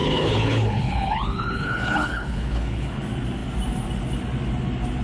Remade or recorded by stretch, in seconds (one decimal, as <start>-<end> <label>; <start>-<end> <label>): 0.0-3.0 remade; 3.0-5.0 recorded